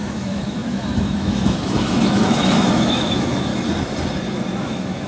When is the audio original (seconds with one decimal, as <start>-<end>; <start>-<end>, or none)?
3.5-4.6